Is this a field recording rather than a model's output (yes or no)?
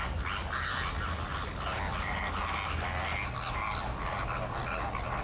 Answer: yes